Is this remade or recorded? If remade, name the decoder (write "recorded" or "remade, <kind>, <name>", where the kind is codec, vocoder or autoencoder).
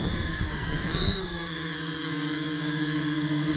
remade, codec, SNAC